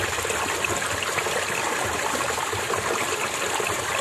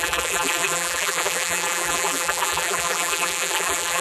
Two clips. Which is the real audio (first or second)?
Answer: first